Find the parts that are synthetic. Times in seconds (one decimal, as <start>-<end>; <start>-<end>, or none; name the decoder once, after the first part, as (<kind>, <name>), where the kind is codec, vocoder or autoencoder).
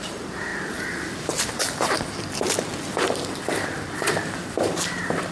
0.0-5.3 (vocoder, BigVGAN v2)